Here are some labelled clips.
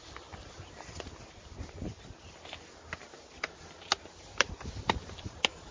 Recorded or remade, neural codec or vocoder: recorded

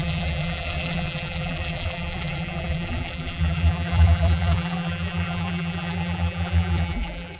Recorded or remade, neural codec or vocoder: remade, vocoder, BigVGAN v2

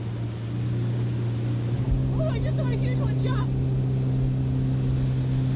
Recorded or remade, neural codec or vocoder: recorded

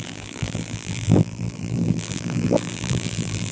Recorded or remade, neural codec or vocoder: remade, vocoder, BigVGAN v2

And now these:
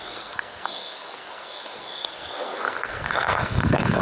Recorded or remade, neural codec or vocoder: remade, codec, SNAC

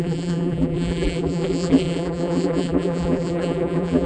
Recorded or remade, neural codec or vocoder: remade, vocoder, BigVGAN v2